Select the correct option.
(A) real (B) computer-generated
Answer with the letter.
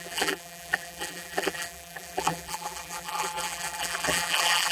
B